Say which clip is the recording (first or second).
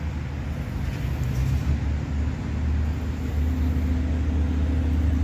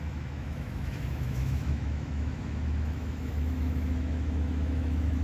first